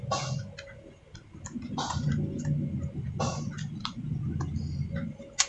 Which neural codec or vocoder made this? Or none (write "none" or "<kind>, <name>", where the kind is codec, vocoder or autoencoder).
none